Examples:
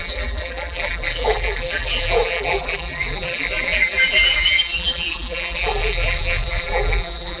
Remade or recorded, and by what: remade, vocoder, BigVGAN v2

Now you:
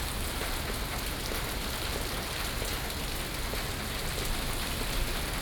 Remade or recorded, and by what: recorded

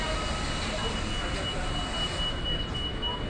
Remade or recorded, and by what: recorded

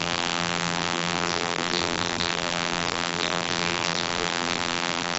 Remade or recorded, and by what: remade, vocoder, BigVGAN v2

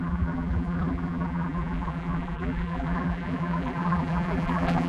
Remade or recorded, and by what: remade, vocoder, BigVGAN v2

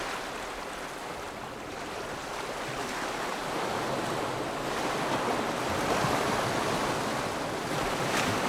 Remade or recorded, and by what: recorded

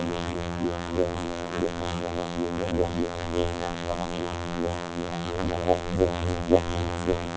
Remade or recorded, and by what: remade, vocoder, BigVGAN v2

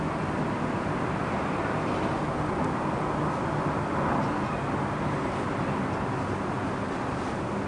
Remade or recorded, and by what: recorded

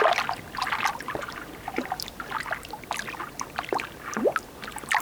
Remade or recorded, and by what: recorded